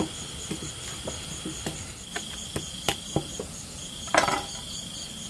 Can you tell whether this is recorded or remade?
recorded